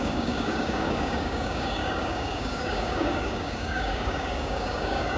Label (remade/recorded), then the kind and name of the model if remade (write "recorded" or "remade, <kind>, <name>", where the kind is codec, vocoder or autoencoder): remade, codec, DAC